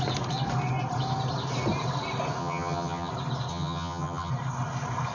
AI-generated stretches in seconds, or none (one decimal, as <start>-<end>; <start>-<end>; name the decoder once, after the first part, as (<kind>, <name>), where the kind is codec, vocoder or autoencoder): 2.4-3.1 (vocoder, HiFi-GAN); 3.5-4.3